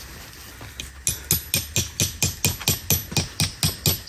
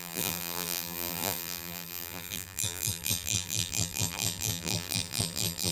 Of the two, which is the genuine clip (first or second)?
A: first